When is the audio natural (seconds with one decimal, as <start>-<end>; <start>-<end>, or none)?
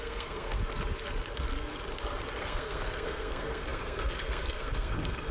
0.6-2.4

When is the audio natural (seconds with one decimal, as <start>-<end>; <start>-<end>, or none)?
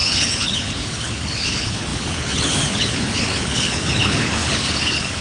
none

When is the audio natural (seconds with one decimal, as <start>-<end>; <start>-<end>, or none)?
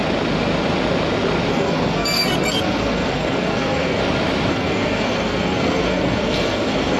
0.0-1.5; 4.0-4.5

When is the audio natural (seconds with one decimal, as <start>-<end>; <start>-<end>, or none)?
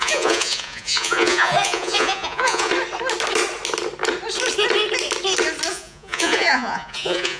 2.7-5.7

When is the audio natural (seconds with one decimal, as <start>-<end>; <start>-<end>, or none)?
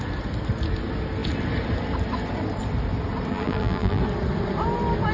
0.0-3.3; 4.0-5.1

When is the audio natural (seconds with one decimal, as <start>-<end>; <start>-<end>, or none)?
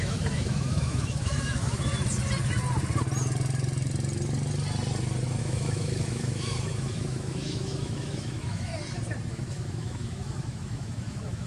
1.9-5.4; 8.7-9.3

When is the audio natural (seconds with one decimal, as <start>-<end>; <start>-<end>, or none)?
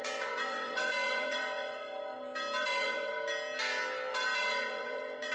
1.8-2.6; 3.1-4.4